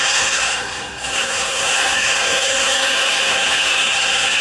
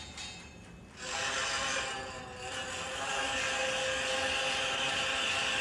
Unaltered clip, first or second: second